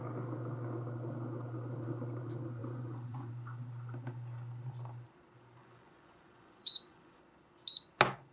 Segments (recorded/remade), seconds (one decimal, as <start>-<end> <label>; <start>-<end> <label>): 0.0-2.6 recorded; 2.6-3.3 remade; 3.3-5.6 recorded; 5.6-7.2 remade; 7.2-8.3 recorded